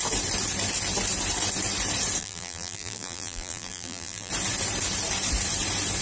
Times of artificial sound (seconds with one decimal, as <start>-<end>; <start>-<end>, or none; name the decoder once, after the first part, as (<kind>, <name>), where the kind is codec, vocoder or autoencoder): 2.2-4.3 (vocoder, BigVGAN v2)